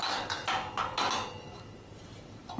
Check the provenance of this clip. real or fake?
real